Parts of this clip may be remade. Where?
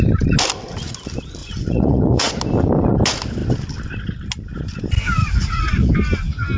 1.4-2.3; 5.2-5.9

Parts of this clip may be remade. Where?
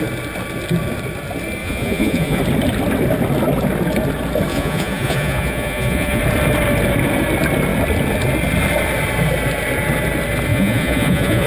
1.6-2.4; 4.5-6.2; 10.5-11.5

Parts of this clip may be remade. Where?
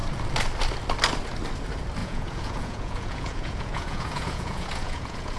2.0-5.4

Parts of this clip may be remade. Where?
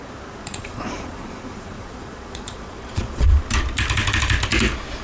0.4-3.4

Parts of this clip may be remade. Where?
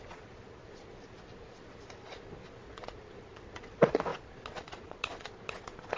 0.0-6.0